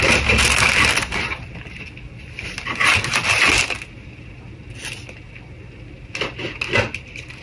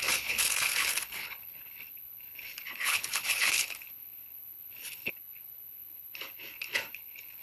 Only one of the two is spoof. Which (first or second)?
second